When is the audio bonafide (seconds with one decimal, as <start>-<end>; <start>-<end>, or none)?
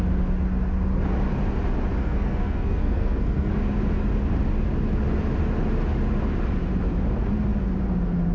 0.0-2.0; 3.5-8.3